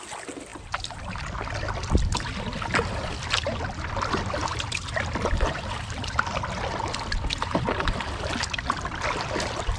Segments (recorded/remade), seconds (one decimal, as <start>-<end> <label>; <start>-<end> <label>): 0.0-9.8 recorded